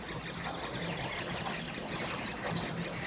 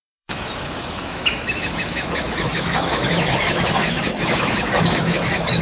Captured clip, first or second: first